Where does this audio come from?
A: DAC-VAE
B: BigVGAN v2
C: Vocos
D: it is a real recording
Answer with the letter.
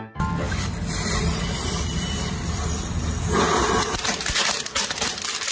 D